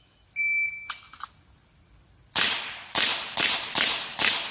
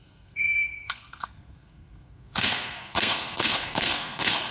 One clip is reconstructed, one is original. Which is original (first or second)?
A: first